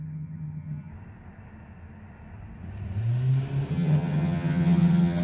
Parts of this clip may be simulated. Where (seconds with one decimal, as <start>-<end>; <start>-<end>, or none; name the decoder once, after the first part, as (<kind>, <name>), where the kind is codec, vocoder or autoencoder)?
0.0-0.9 (vocoder, HiFi-GAN); 3.7-5.2